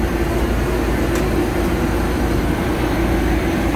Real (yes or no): yes